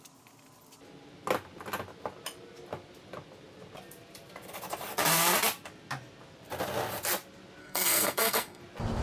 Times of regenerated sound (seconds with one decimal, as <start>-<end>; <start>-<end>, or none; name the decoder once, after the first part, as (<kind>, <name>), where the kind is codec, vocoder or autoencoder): 7.6-8.6 (codec, SNAC)